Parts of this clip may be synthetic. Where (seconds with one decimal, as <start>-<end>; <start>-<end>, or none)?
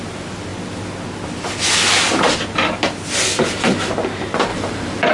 4.5-5.1